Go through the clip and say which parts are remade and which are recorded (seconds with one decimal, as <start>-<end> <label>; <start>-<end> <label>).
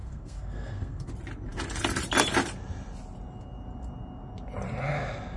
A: 0.0-1.1 remade; 1.1-5.4 recorded